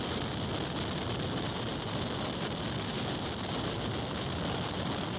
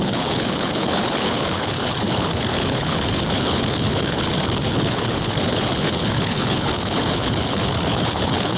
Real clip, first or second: first